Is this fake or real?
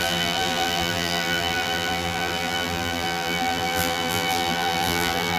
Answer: fake